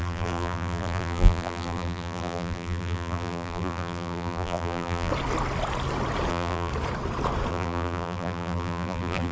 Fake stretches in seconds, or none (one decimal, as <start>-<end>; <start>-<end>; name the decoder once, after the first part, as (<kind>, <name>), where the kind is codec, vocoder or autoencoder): 0.0-5.1 (vocoder, BigVGAN v2); 6.3-6.7; 7.5-9.3